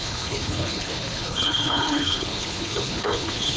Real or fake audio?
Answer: fake